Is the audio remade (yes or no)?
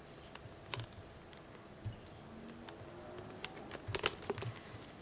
no